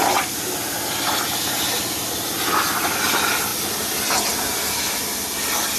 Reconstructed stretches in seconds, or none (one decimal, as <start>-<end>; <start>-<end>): none